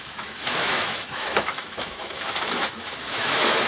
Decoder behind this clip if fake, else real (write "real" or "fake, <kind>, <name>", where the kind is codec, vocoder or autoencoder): fake, autoencoder, DAC-VAE